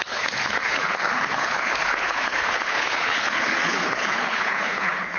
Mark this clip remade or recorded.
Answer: remade